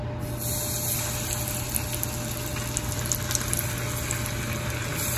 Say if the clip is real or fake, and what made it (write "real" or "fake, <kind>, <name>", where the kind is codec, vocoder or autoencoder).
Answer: real